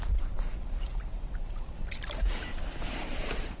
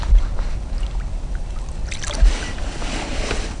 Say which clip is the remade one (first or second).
first